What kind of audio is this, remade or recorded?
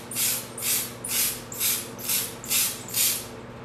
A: recorded